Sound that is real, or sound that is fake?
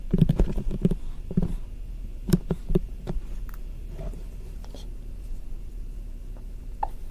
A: fake